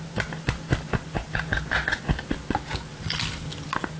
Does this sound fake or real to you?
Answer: real